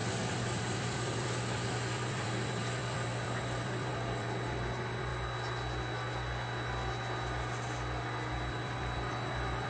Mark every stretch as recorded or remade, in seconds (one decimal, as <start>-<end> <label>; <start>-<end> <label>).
0.0-5.1 remade; 5.1-8.5 recorded; 8.5-9.7 remade

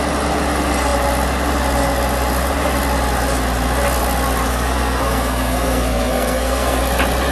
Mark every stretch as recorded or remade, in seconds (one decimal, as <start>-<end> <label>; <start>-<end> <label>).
0.0-4.5 recorded; 4.5-6.8 remade; 6.8-7.3 recorded